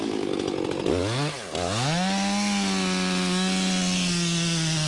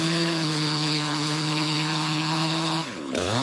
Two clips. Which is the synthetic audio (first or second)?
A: second